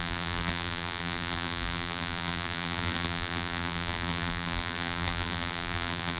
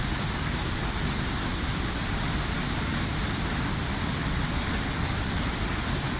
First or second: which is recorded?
second